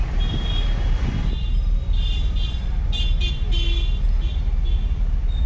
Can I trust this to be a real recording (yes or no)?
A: yes